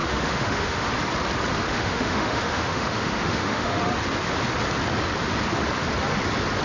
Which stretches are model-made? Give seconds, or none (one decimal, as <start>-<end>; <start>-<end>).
0.0-0.9; 1.7-3.8